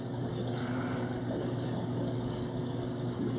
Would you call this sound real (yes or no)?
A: no